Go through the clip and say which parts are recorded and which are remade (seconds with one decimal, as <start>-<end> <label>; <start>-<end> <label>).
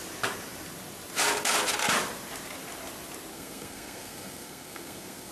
0.0-3.3 recorded; 3.3-5.3 remade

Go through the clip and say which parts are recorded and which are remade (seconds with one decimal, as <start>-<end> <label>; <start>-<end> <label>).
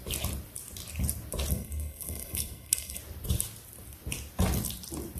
0.0-1.5 recorded; 1.5-3.0 remade; 3.0-5.2 recorded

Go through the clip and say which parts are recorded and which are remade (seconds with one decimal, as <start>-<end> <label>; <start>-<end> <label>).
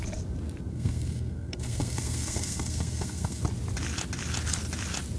0.0-0.7 recorded; 0.7-3.4 remade; 3.4-5.2 recorded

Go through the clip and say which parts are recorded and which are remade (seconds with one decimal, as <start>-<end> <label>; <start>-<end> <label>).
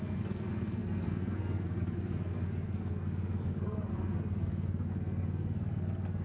0.0-6.2 remade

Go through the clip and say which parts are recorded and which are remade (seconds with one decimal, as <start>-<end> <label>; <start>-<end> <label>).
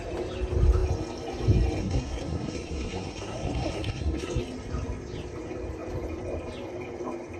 0.0-1.8 recorded; 1.8-4.4 remade; 4.4-7.4 recorded